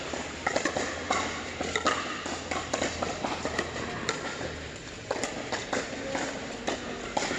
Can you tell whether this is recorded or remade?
recorded